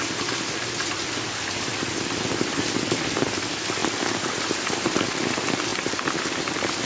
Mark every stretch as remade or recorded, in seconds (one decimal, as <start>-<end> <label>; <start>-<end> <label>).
0.0-6.9 recorded